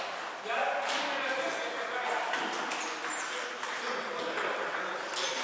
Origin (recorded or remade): recorded